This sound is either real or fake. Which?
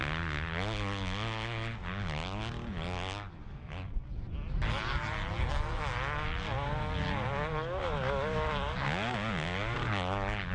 real